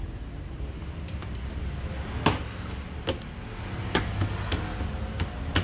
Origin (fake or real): real